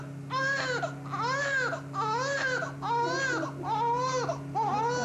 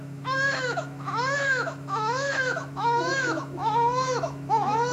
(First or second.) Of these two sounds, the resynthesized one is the second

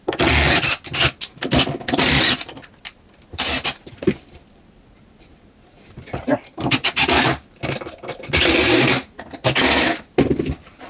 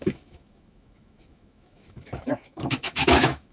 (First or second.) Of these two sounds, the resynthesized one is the second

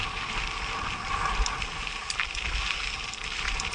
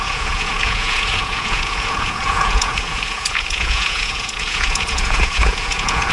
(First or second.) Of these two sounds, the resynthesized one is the second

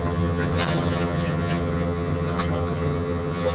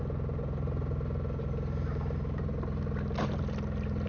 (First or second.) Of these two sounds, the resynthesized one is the first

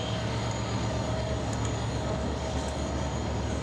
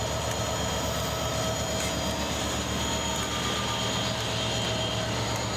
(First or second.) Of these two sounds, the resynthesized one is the first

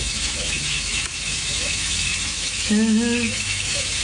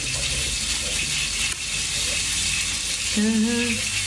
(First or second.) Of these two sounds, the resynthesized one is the first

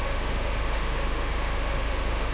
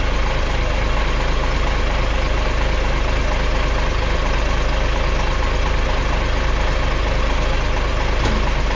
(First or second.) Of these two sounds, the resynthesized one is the first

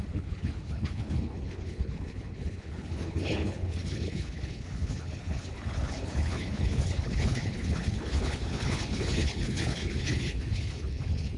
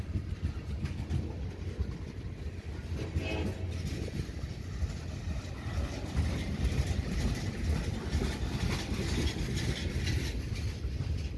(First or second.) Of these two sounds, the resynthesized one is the first